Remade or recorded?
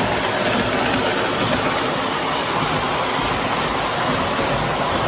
recorded